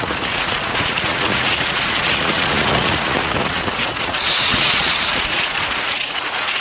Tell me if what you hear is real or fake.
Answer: fake